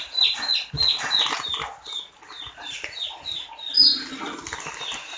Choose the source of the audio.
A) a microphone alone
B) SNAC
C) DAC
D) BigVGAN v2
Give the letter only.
A